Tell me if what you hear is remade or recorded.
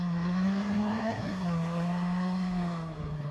remade